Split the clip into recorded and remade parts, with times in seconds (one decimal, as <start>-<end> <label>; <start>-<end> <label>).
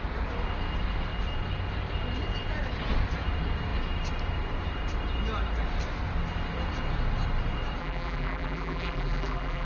0.0-7.8 recorded; 7.8-9.7 remade